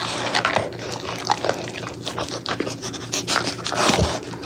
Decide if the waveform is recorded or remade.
recorded